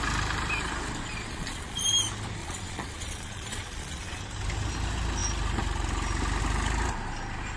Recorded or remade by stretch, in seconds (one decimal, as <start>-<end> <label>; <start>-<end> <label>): 0.0-1.3 recorded; 1.3-1.8 remade; 1.8-2.4 recorded; 2.4-4.2 remade; 4.2-7.6 recorded

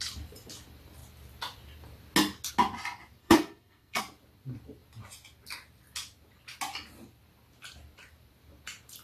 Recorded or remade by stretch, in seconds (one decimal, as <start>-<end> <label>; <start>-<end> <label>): 0.0-3.2 recorded; 3.2-4.0 remade; 4.0-9.0 recorded

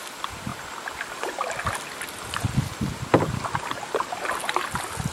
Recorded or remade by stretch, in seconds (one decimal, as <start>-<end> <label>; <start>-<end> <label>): 0.0-5.1 recorded

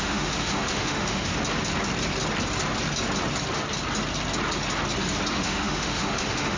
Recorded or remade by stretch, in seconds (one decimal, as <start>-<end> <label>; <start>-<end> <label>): 0.0-1.3 remade; 1.3-5.3 recorded; 5.3-6.6 remade

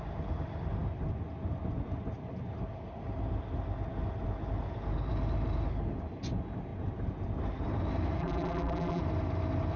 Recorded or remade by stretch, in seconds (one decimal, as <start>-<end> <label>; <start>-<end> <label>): 0.0-8.2 recorded; 8.2-9.0 remade; 9.0-9.8 recorded

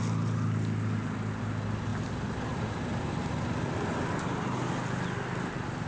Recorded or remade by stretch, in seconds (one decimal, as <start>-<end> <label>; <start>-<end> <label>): 0.0-5.9 recorded

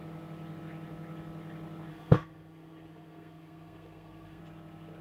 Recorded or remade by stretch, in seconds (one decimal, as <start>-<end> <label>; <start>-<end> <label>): 0.0-1.9 recorded; 1.9-4.4 remade; 4.4-5.0 recorded